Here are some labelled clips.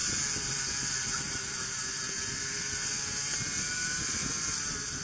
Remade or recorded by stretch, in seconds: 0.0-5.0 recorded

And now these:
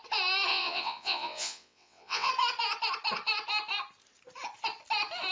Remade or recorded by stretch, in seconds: 0.0-0.5 recorded; 0.5-2.3 remade; 2.3-5.3 recorded

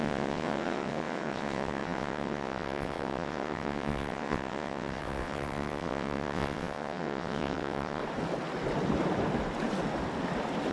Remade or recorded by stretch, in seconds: 0.0-8.0 remade; 8.0-10.7 recorded

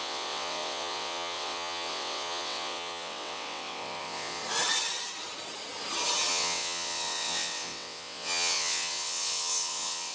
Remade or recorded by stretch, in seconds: 0.0-4.4 remade; 4.4-6.3 recorded; 6.3-10.1 remade

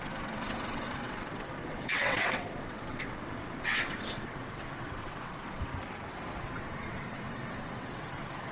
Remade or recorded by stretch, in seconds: 0.0-5.7 remade; 5.7-6.4 recorded; 6.4-8.5 remade